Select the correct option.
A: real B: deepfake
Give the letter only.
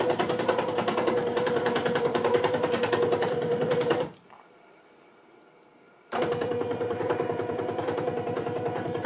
B